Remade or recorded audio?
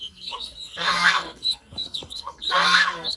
remade